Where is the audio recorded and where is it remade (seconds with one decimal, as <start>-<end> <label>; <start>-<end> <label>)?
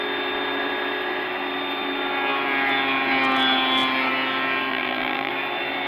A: 0.0-4.7 recorded; 4.7-5.3 remade; 5.3-5.9 recorded